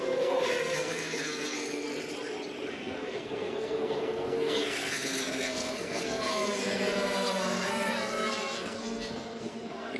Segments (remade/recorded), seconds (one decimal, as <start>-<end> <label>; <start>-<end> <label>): 0.0-1.9 remade; 1.9-2.7 recorded; 2.7-10.0 remade